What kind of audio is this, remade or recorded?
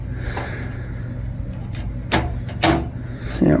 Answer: recorded